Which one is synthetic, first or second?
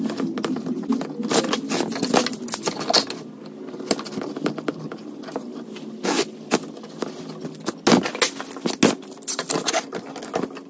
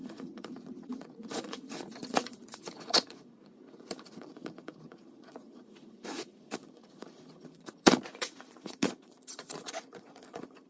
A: second